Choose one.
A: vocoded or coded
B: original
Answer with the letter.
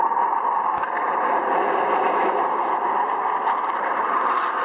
A